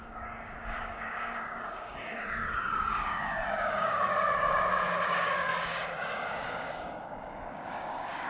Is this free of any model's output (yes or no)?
no